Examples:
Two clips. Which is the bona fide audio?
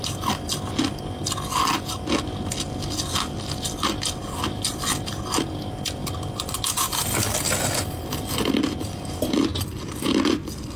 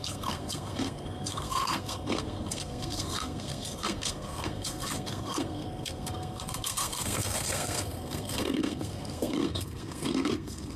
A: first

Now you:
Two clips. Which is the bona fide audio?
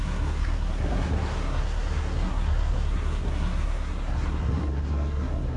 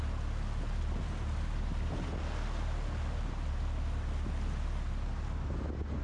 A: second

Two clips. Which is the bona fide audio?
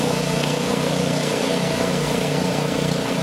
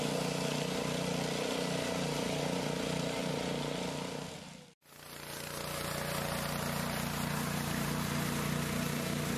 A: second